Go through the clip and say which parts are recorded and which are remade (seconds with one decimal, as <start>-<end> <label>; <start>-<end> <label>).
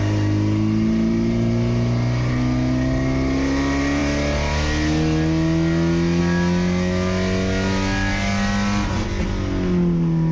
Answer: 0.0-10.3 recorded